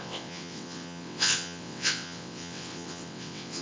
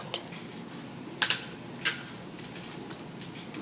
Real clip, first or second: second